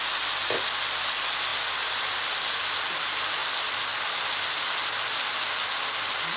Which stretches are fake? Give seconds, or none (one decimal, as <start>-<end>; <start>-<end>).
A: none